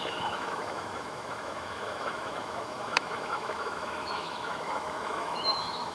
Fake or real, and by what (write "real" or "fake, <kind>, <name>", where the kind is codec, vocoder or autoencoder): fake, autoencoder, DAC-VAE